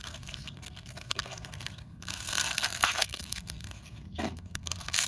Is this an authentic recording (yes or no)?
no